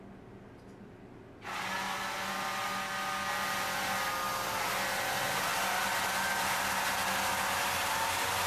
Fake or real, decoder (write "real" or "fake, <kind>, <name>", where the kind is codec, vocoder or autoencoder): real